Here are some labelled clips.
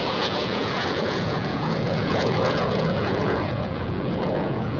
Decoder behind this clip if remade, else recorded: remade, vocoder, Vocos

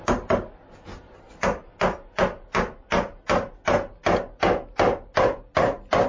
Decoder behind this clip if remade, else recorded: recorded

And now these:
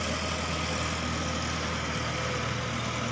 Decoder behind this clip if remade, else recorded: recorded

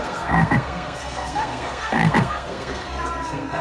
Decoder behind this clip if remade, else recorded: remade, codec, SNAC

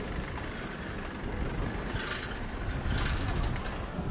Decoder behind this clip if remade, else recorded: recorded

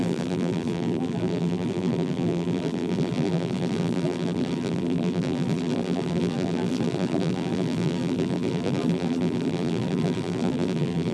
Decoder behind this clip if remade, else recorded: remade, vocoder, BigVGAN v2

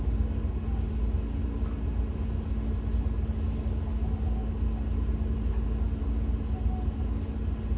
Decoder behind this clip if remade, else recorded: recorded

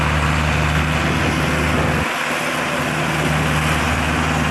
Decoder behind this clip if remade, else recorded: recorded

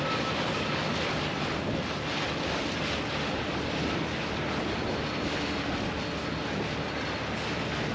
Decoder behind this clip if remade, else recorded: recorded